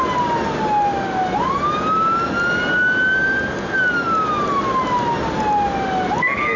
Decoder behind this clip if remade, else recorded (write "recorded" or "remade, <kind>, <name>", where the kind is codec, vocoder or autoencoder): recorded